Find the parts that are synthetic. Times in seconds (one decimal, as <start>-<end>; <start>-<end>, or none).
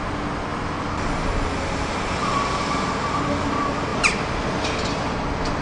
none